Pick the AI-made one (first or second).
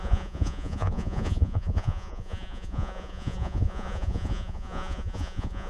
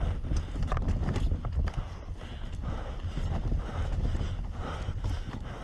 first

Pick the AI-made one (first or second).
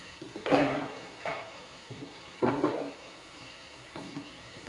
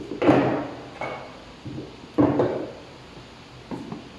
first